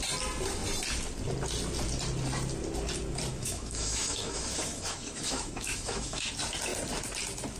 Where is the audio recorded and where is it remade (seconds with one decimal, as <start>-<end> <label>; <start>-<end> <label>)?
0.0-3.3 recorded; 3.3-6.3 remade; 6.3-7.6 recorded